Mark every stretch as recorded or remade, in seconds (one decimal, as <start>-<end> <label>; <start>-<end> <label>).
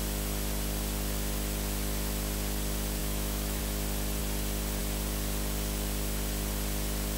0.0-3.0 recorded; 3.0-3.6 remade; 3.6-7.2 recorded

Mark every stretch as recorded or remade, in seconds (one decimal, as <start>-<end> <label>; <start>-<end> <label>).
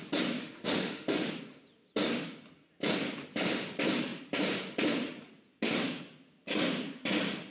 0.0-0.4 recorded; 0.4-1.3 remade; 1.3-7.5 recorded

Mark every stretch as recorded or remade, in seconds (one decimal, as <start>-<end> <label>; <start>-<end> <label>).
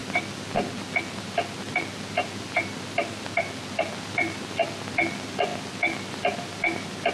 0.0-7.1 recorded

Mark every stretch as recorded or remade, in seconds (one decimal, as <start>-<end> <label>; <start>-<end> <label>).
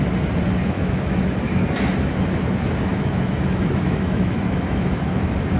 0.0-0.6 recorded; 0.6-1.3 remade; 1.3-2.9 recorded; 2.9-5.6 remade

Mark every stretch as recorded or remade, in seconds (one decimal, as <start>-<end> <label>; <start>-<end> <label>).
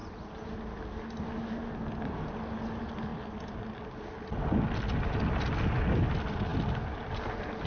0.0-7.7 recorded